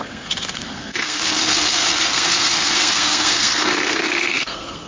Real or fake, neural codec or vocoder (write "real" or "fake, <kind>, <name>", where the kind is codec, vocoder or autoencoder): fake, codec, SNAC